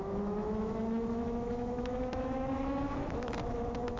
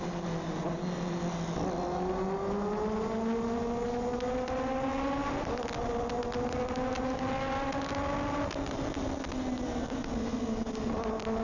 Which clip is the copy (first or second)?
first